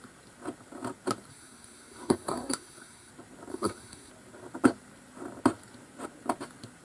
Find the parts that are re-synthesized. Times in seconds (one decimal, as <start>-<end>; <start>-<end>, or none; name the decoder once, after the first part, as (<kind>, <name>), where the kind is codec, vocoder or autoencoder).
1.3-3.1 (codec, SNAC); 3.5-4.1